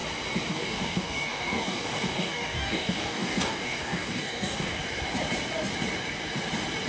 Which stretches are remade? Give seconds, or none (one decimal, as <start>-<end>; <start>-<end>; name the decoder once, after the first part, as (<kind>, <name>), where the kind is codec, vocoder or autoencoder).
0.5-4.8 (codec, DAC)